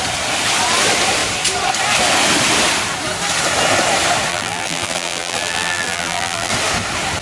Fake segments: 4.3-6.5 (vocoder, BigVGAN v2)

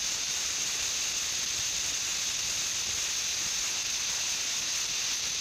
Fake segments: 0.0-0.7 (vocoder, BigVGAN v2)

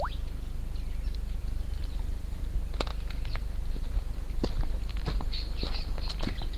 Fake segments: 1.4-2.4 (vocoder, BigVGAN v2)